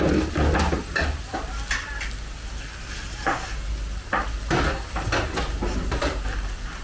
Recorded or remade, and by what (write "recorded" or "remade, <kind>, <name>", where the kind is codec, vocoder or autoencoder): recorded